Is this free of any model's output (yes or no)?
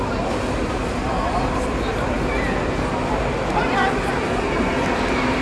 yes